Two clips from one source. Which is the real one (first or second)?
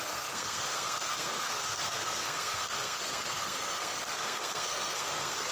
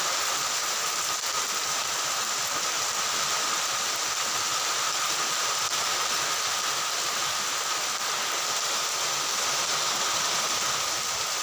second